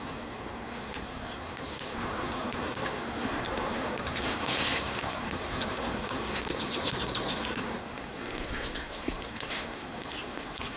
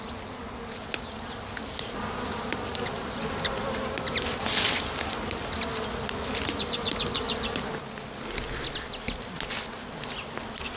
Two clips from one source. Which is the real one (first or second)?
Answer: second